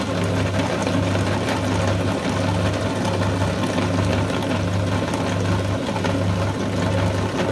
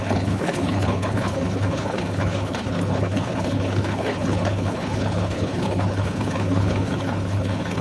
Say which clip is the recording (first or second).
first